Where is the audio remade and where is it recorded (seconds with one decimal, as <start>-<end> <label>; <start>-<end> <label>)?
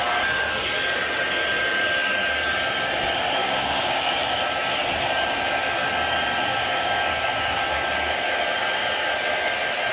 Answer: 0.0-3.4 recorded; 3.4-4.1 remade; 4.1-6.5 recorded; 6.5-7.5 remade; 7.5-9.9 recorded